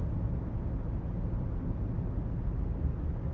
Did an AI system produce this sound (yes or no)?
no